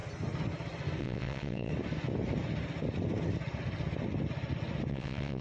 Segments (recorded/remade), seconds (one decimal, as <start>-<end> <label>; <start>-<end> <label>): 0.0-1.0 recorded; 1.0-1.7 remade; 1.7-4.9 recorded; 4.9-5.4 remade